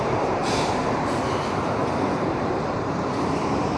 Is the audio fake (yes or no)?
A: yes